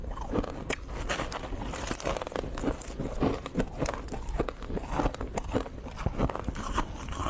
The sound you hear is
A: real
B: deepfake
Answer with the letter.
A